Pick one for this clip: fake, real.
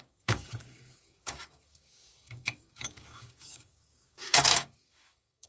fake